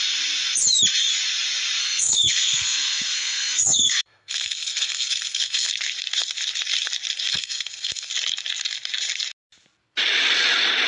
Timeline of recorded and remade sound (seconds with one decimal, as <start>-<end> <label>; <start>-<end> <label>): 0.0-1.8 recorded; 1.8-5.7 remade; 5.7-7.3 recorded; 7.3-8.1 remade; 8.1-10.9 recorded